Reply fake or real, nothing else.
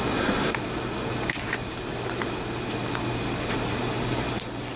real